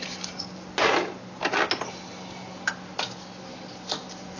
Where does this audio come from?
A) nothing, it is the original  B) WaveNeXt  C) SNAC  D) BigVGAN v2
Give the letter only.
A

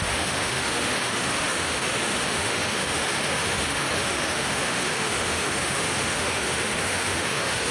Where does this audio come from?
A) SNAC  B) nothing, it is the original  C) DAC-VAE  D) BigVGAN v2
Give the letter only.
C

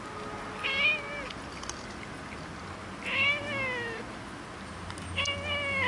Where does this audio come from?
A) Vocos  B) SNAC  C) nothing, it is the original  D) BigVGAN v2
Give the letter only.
C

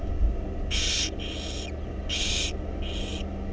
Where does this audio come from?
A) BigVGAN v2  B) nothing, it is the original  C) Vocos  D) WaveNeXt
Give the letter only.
B